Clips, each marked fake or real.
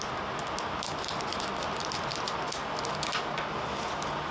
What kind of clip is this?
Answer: real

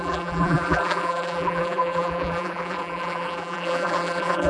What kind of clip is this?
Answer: fake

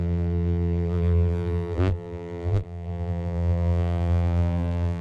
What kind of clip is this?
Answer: fake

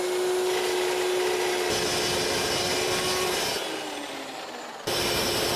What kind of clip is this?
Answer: real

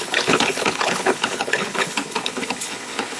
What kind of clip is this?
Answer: fake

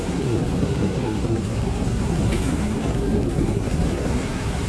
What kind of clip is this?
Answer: fake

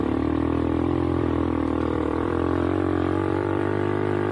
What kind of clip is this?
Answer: fake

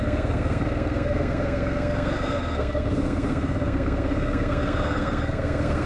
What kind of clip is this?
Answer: fake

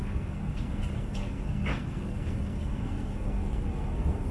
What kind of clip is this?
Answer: fake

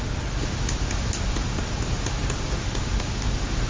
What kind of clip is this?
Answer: real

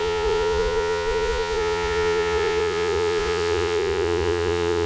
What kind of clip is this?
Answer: fake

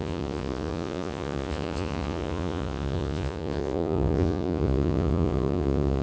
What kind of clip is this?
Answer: fake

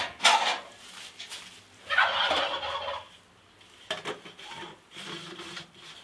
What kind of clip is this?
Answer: real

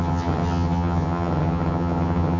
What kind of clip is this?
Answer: fake